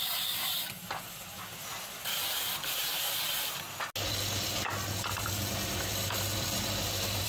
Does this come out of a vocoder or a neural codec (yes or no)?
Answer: no